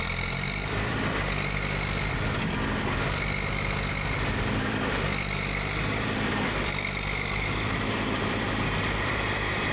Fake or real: fake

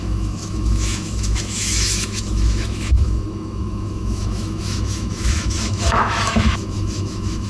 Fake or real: fake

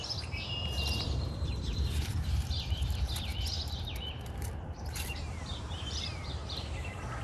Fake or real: fake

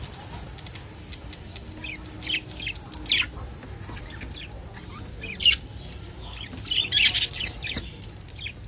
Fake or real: real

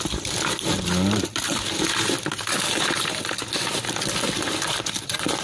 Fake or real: real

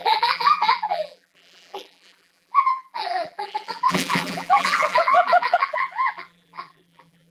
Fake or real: fake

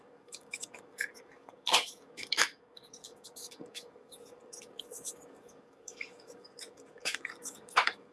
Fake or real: fake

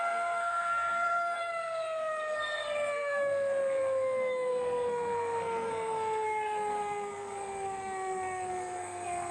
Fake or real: fake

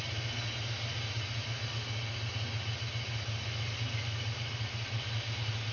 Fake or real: real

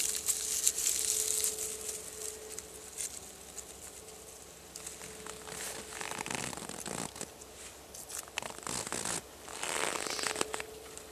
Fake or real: real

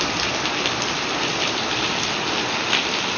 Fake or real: real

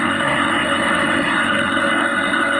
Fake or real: fake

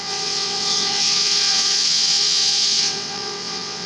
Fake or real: fake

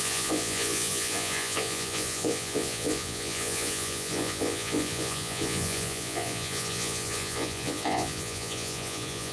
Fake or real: fake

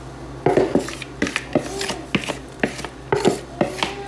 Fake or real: real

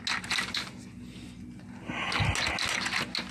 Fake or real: real